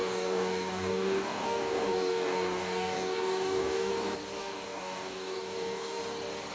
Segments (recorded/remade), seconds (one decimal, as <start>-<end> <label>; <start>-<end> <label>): 0.0-3.9 remade; 3.9-4.4 recorded; 4.4-6.0 remade; 6.0-6.5 recorded